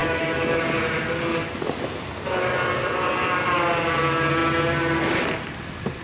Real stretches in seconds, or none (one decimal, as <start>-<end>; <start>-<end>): 0.6-6.0